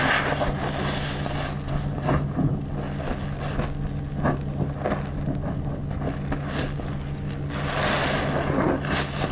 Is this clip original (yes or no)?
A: yes